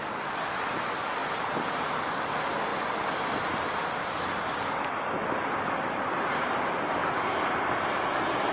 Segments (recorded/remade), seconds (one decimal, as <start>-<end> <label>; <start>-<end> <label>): 0.0-8.5 recorded